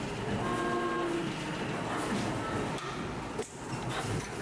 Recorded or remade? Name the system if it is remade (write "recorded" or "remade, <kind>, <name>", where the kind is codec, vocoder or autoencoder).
recorded